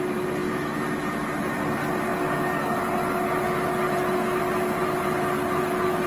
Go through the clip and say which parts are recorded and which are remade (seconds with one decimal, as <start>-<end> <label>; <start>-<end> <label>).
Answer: 0.0-6.1 recorded